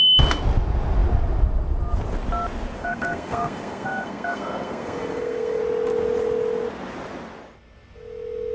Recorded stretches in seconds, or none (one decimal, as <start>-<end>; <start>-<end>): 0.0-2.8; 5.6-8.5